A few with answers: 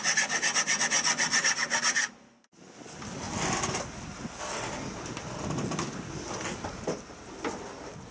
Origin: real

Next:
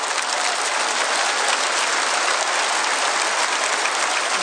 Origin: real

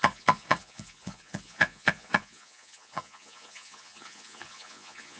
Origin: fake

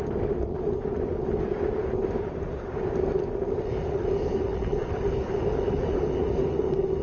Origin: real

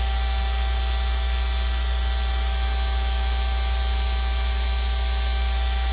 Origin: real